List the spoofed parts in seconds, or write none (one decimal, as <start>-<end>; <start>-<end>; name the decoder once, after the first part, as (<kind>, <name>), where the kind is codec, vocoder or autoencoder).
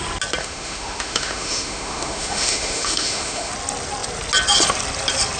0.4-3.5 (autoencoder, DAC-VAE)